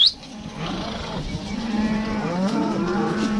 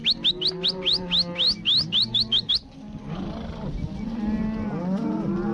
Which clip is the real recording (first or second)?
second